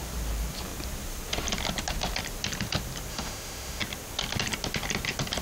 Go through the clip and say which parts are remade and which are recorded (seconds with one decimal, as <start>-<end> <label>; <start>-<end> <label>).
0.0-3.1 recorded; 3.1-3.8 remade; 3.8-5.4 recorded